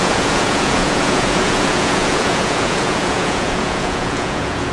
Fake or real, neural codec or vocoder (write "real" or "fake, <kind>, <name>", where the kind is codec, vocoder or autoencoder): fake, vocoder, Vocos